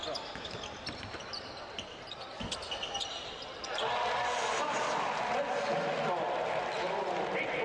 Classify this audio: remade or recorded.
recorded